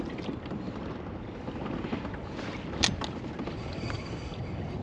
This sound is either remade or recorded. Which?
recorded